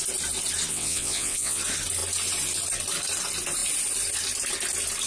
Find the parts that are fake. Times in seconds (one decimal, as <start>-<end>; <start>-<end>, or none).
0.7-1.6

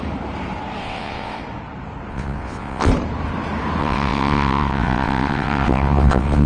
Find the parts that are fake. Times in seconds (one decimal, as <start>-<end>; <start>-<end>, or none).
0.8-1.4; 2.1-2.9; 3.8-6.5

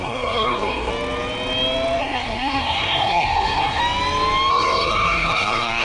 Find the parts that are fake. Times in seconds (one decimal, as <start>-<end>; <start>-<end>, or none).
0.0-0.9; 2.0-3.8; 4.5-5.8

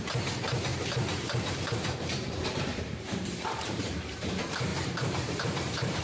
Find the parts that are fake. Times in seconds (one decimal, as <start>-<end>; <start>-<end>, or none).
0.7-4.3; 4.7-6.0